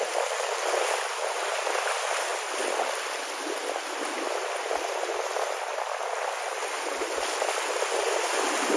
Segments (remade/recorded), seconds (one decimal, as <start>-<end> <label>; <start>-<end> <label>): 0.0-8.8 recorded